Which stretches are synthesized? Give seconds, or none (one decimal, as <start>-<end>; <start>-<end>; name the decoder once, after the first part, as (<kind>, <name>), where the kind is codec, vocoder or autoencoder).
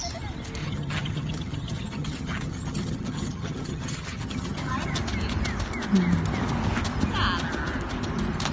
0.6-5.0 (vocoder, HiFi-GAN)